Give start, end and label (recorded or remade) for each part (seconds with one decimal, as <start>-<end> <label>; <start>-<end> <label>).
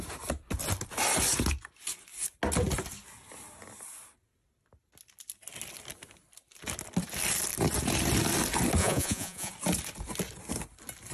0.0-8.8 recorded; 8.8-9.5 remade; 9.5-11.1 recorded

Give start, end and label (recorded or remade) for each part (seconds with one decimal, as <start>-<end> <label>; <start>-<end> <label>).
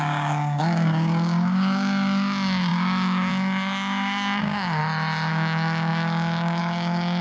0.0-4.8 remade; 4.8-5.3 recorded; 5.3-7.2 remade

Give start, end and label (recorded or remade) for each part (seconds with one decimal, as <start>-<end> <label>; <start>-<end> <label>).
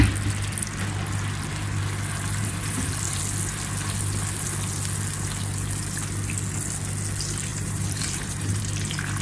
0.0-2.4 recorded; 2.4-3.2 remade; 3.2-7.5 recorded; 7.5-8.6 remade; 8.6-9.2 recorded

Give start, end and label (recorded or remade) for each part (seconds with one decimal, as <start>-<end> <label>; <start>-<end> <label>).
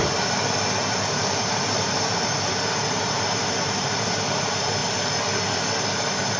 0.0-4.8 remade; 4.8-6.4 recorded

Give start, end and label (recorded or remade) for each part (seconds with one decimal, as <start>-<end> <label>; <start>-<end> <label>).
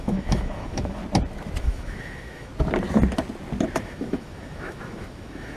0.0-1.0 remade; 1.0-1.6 recorded; 1.6-2.5 remade; 2.5-3.8 recorded; 3.8-5.6 remade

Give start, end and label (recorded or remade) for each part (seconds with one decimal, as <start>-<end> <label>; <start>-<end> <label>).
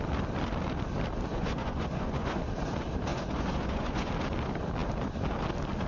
0.0-1.3 recorded; 1.3-2.4 remade; 2.4-3.1 recorded; 3.1-4.1 remade; 4.1-5.9 recorded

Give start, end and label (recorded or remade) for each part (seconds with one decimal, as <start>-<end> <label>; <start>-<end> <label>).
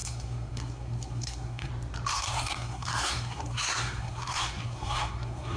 0.0-1.7 remade; 1.7-2.1 recorded; 2.1-5.6 remade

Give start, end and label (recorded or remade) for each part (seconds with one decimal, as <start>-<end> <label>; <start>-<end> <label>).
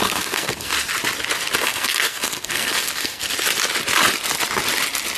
0.0-0.7 remade; 0.7-1.6 recorded; 1.6-3.2 remade; 3.2-5.2 recorded